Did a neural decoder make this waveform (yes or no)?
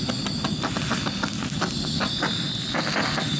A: no